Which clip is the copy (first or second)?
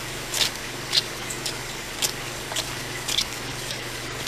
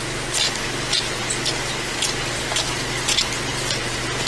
first